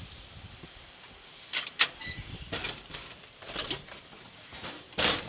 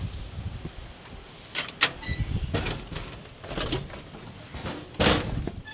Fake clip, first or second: first